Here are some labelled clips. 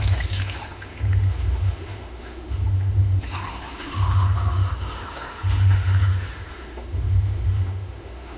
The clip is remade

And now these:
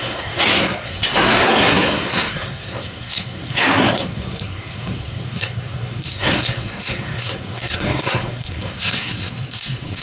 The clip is remade